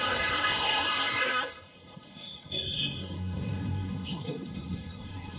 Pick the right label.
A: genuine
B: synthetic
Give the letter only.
B